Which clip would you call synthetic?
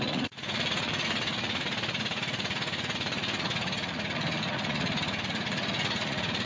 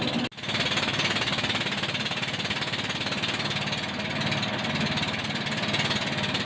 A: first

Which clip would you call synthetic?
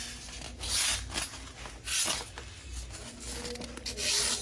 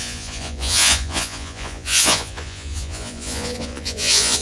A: second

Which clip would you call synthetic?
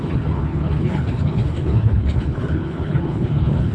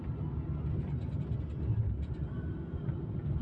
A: first